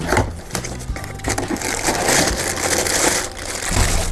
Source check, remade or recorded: recorded